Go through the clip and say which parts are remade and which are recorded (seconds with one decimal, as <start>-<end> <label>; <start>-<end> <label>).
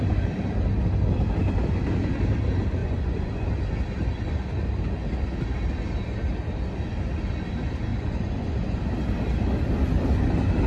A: 0.0-2.8 recorded; 2.8-3.5 remade; 3.5-7.9 recorded; 7.9-8.8 remade; 8.8-10.7 recorded